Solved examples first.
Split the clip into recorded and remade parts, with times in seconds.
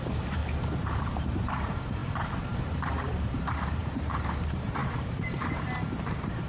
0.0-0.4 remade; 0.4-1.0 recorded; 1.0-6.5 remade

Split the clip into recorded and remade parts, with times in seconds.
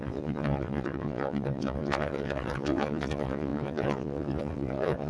0.0-5.1 remade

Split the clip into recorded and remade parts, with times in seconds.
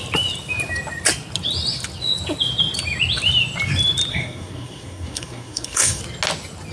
0.0-4.1 recorded; 4.1-6.0 remade; 6.0-6.7 recorded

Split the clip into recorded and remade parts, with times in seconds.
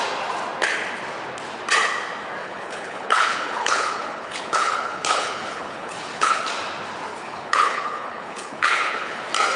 0.0-2.4 recorded; 2.4-6.4 remade; 6.4-7.1 recorded; 7.1-9.2 remade; 9.2-9.6 recorded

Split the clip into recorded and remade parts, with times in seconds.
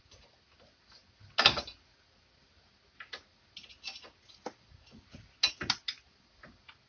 0.0-6.9 recorded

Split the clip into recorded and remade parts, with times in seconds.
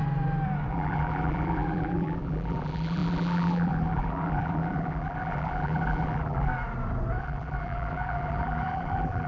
0.0-0.7 recorded; 0.7-6.5 remade; 6.5-7.2 recorded; 7.2-9.3 remade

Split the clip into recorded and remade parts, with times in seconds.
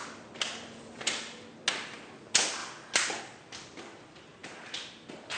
0.0-5.4 recorded